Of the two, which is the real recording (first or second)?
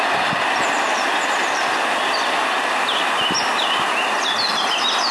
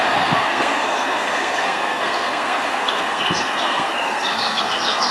first